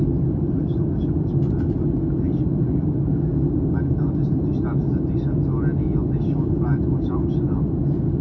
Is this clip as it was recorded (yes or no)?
yes